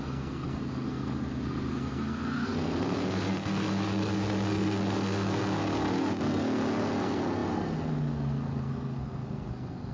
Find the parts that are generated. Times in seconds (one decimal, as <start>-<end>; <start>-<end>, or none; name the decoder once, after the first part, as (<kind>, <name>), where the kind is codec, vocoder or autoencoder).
0.0-9.9 (codec, SNAC)